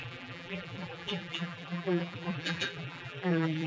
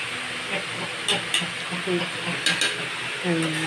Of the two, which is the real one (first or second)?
second